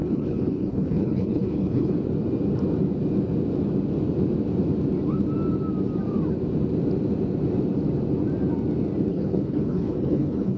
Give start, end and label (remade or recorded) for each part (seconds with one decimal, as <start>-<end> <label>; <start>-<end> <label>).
0.0-1.9 remade; 1.9-9.1 recorded; 9.1-10.6 remade